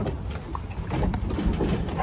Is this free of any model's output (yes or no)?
yes